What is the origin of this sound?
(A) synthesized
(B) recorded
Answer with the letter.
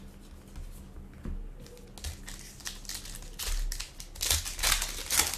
B